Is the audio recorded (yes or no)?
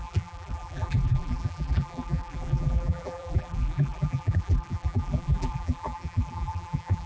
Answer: no